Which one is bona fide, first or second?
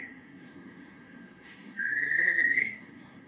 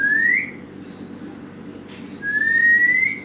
second